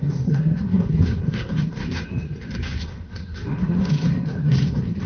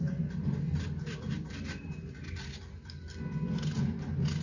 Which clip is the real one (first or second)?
second